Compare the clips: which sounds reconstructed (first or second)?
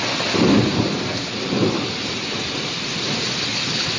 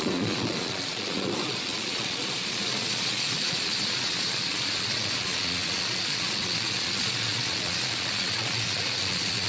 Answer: second